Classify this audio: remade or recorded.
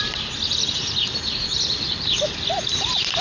recorded